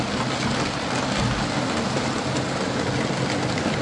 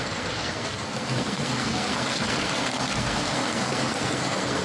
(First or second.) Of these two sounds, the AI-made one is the second